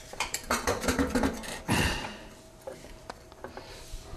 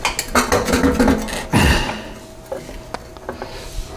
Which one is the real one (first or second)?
second